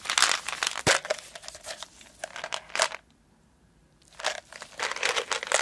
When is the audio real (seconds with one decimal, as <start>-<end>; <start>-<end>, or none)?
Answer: 0.0-5.6